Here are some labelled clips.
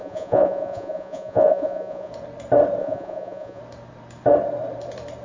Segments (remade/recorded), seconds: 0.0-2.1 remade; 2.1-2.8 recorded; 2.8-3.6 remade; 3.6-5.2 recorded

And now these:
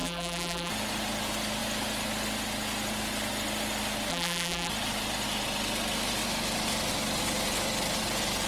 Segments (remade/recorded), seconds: 0.0-0.7 remade; 0.7-4.1 recorded; 4.1-4.7 remade; 4.7-8.5 recorded

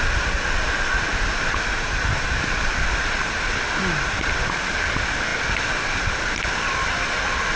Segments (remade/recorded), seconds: 0.0-7.6 recorded